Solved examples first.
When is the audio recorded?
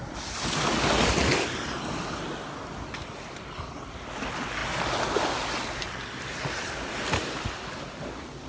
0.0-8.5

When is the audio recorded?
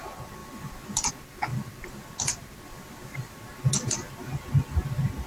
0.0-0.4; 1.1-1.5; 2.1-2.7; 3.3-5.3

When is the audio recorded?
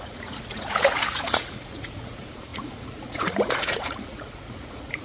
none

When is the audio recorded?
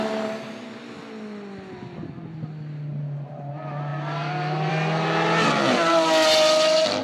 0.0-7.0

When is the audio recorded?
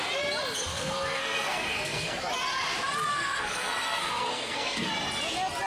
0.0-0.7; 2.2-3.1; 4.9-5.7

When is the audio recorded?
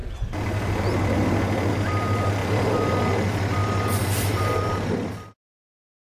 0.0-2.4; 2.9-3.6; 5.1-6.0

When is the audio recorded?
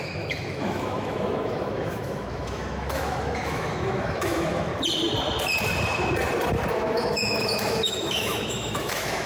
4.7-6.7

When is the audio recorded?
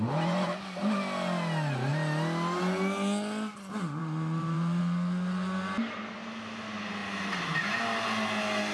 0.0-4.0; 4.8-7.0; 7.8-8.7